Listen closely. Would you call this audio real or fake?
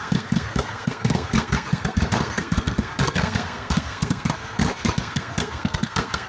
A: fake